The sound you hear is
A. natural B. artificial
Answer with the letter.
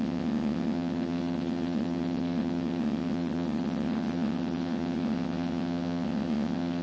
B